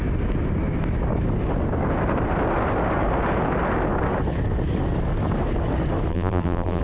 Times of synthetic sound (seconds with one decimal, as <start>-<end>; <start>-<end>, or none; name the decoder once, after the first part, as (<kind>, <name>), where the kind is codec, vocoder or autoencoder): 6.1-6.8 (vocoder, BigVGAN v2)